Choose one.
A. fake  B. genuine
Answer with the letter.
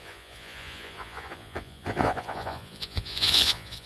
A